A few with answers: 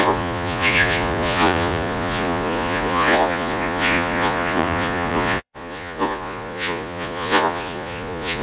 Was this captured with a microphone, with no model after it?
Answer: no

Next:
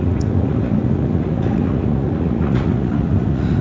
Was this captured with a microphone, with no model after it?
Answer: no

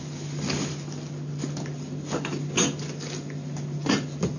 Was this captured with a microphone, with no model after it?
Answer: yes